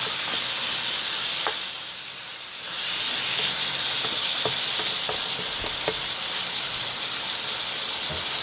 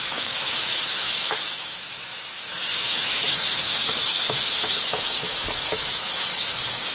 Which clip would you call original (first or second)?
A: first